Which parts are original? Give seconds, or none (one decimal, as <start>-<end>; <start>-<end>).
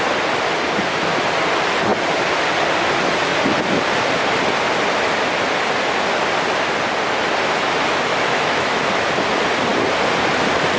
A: 0.0-8.1; 8.8-10.8